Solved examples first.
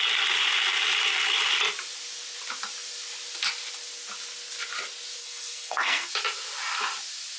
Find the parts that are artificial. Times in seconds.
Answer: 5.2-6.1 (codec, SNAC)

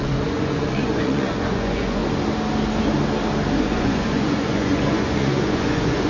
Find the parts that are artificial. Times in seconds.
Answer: 0.0-2.0 (vocoder, Vocos); 3.6-6.1

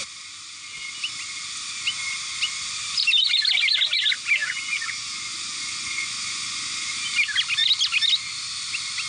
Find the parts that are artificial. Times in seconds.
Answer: 4.4-6.9 (vocoder, Vocos)